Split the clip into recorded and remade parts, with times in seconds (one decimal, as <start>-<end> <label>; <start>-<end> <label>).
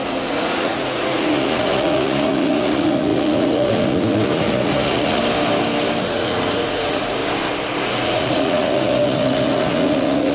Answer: 0.0-5.2 remade; 5.2-6.0 recorded; 6.0-7.2 remade; 7.2-7.8 recorded; 7.8-10.3 remade